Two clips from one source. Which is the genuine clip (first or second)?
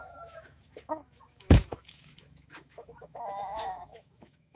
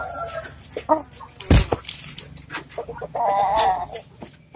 second